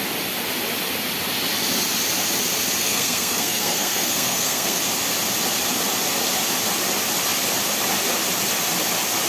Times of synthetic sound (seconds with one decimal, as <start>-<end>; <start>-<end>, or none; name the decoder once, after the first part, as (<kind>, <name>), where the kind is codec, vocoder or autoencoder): 2.8-4.8 (codec, SNAC)